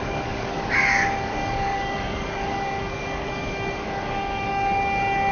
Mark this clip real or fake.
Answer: fake